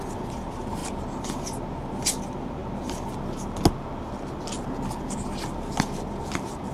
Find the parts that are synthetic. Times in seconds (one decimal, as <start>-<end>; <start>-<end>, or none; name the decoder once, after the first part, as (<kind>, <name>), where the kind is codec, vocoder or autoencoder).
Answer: none